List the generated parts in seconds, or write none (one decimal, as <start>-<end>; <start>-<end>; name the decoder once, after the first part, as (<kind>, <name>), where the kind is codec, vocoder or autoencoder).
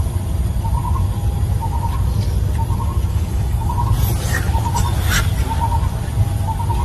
3.1-3.7 (codec, DAC)